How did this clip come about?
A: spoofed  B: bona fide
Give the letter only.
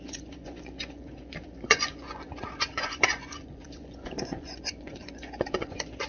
A